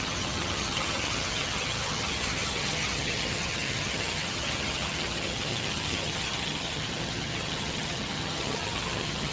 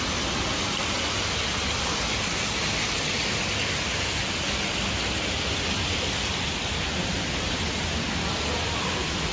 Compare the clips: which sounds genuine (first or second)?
second